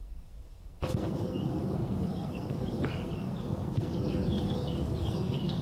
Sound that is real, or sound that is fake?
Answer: fake